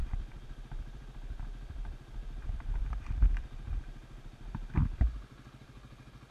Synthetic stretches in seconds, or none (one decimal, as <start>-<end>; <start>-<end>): 0.0-3.8

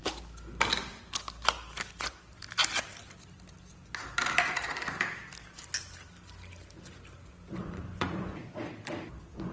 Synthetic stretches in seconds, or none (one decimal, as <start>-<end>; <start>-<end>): 7.6-8.7

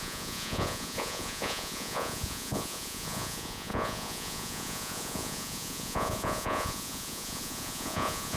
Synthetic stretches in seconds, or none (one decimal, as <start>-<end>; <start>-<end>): 0.0-8.4